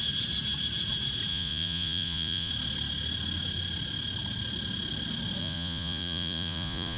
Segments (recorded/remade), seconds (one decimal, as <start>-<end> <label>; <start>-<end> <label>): 0.0-1.3 recorded; 1.3-2.5 remade; 2.5-5.4 recorded; 5.4-7.0 remade